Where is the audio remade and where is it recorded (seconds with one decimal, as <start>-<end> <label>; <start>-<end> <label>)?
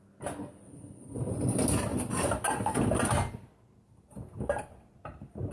0.0-5.5 recorded